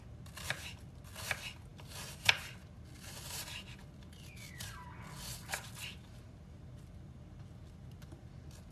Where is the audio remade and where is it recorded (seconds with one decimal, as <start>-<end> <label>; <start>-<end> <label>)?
0.0-8.7 recorded

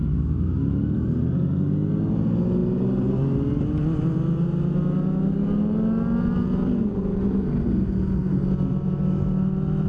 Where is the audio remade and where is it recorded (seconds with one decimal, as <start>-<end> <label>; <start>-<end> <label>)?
0.0-0.6 remade; 0.6-9.9 recorded

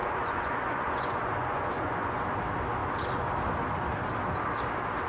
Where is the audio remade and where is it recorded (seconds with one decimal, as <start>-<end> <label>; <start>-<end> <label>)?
0.0-2.2 remade; 2.2-5.1 recorded